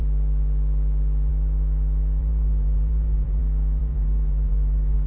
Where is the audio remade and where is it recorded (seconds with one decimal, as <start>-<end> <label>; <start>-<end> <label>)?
0.0-2.2 recorded; 2.2-3.4 remade; 3.4-3.8 recorded; 3.8-5.1 remade